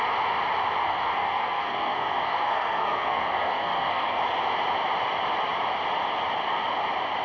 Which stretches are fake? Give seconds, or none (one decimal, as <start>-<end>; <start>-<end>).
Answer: 0.8-4.2